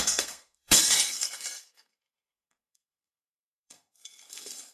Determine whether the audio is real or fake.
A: fake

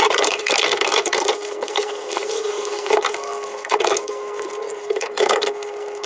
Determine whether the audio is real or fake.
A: fake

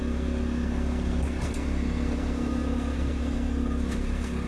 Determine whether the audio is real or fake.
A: fake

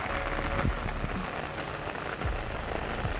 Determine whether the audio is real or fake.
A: real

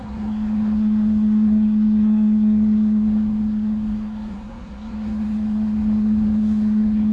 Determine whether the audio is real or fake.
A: fake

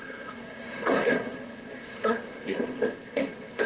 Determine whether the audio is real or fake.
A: fake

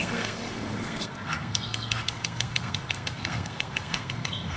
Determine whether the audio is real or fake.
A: fake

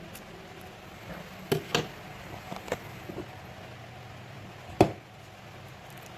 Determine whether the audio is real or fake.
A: real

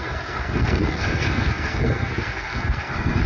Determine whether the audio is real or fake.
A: fake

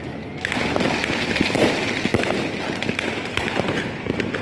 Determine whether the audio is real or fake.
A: real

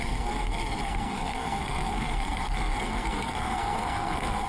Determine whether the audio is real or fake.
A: fake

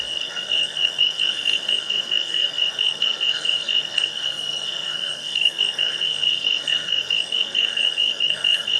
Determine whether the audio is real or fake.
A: fake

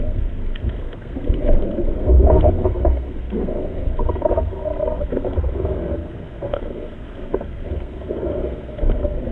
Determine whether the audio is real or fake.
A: fake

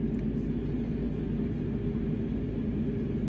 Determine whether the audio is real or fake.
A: real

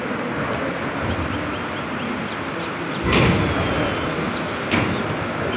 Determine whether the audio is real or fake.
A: real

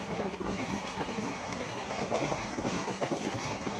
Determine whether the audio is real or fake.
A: fake